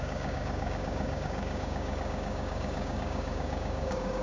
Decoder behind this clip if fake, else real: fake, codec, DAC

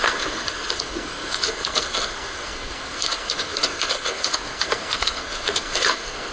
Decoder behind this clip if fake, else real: fake, codec, SNAC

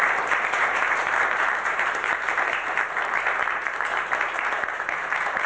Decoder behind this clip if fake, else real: fake, vocoder, BigVGAN v2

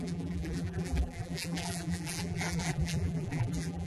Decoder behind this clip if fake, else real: fake, vocoder, BigVGAN v2